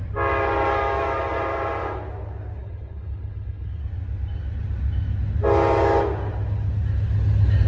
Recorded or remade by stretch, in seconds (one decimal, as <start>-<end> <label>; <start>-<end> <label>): 0.0-2.6 recorded; 2.6-3.8 remade; 3.8-7.7 recorded